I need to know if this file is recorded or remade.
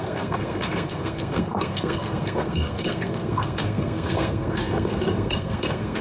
remade